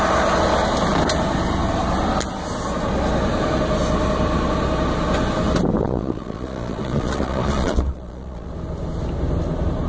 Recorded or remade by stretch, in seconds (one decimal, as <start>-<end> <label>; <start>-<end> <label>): 0.0-5.8 recorded; 5.8-8.5 remade; 8.5-9.9 recorded